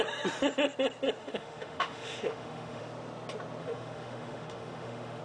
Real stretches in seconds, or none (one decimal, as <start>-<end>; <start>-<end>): 0.0-1.2; 2.8-3.6